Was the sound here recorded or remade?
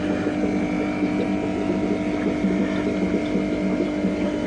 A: recorded